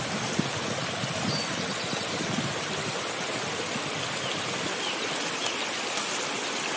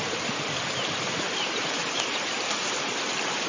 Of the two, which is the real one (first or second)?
first